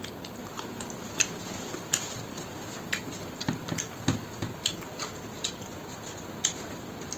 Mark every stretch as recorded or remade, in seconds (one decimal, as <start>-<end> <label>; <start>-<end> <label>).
0.0-0.4 recorded; 0.4-1.8 remade; 1.8-7.2 recorded

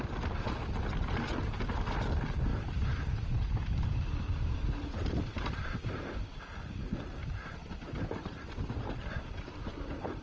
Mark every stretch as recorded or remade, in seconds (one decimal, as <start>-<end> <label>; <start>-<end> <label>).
0.0-2.5 recorded; 2.5-6.4 remade; 6.4-7.2 recorded; 7.2-10.2 remade

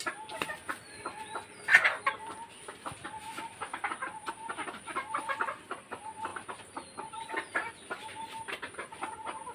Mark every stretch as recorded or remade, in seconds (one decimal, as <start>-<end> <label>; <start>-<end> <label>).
0.0-9.5 recorded

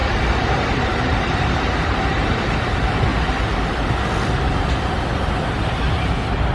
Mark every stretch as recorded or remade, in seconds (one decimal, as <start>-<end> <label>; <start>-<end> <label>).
0.0-1.5 remade; 1.5-6.5 recorded

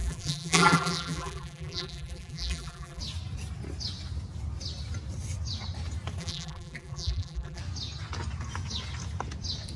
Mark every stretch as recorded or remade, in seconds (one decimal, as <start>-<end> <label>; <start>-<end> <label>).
0.0-3.0 remade; 3.0-6.2 recorded; 6.2-7.6 remade; 7.6-9.8 recorded

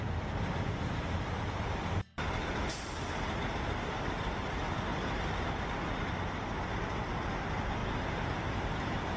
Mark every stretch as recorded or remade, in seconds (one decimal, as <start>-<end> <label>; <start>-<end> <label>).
0.0-9.2 recorded

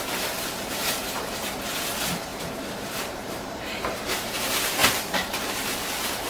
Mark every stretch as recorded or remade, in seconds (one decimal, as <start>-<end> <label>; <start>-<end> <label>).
0.0-0.8 recorded; 0.8-1.8 remade; 1.8-2.3 recorded; 2.3-4.3 remade; 4.3-4.8 recorded; 4.8-5.8 remade; 5.8-6.3 recorded

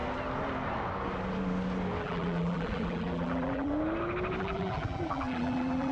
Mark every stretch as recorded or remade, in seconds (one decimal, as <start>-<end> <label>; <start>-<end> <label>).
0.0-2.0 recorded; 2.0-3.7 remade; 3.7-4.4 recorded; 4.4-5.9 remade